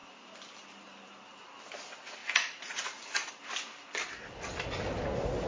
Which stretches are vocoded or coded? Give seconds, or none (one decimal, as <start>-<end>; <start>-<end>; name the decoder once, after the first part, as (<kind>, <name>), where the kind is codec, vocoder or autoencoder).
2.2-3.3 (vocoder, Vocos)